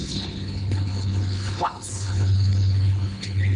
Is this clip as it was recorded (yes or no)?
no